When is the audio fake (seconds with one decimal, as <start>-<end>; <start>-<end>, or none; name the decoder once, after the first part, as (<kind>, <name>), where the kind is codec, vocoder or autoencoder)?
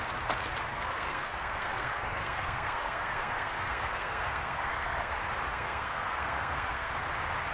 0.7-5.1 (codec, SNAC); 5.5-6.9